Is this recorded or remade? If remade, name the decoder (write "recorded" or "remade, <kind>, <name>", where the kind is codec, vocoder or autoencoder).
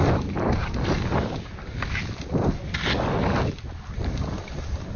recorded